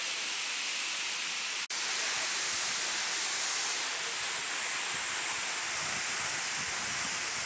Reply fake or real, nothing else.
real